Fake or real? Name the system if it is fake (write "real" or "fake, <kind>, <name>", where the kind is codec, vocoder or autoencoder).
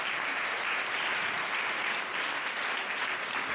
real